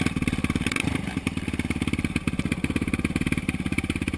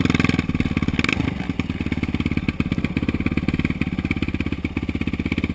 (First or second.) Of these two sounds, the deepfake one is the first